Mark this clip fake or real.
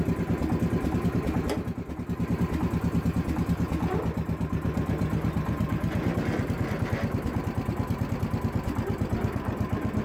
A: real